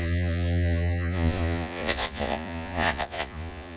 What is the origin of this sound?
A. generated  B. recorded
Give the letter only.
A